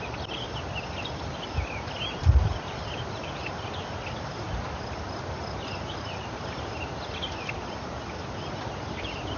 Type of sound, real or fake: real